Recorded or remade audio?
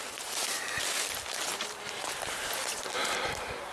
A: recorded